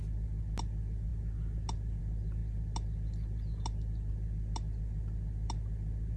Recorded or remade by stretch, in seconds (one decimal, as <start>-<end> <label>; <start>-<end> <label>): 0.0-6.2 recorded